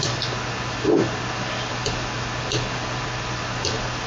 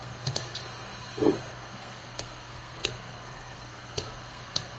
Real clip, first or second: first